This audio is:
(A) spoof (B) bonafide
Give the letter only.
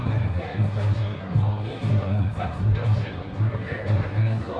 A